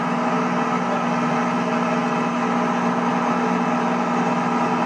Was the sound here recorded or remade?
recorded